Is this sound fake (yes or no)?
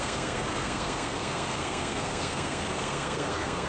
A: yes